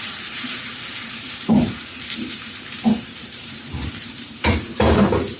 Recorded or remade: remade